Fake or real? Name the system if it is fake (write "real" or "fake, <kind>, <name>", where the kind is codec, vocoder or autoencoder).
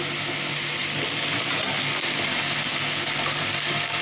real